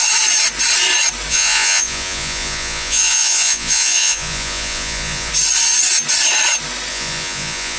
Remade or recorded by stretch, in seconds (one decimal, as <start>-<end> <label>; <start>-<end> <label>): 0.0-1.3 recorded; 1.3-5.3 remade; 5.3-6.9 recorded; 6.9-7.8 remade